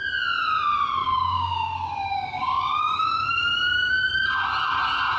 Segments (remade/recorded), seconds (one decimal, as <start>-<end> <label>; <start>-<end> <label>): 0.0-1.0 recorded; 1.0-4.1 remade; 4.1-5.2 recorded